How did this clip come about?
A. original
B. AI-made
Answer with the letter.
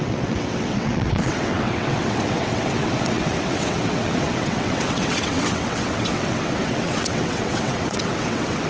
B